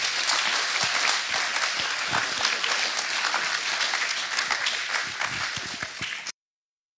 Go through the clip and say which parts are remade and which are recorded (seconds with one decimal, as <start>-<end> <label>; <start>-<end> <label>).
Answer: 0.0-7.0 recorded